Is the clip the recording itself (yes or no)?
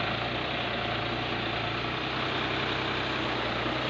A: yes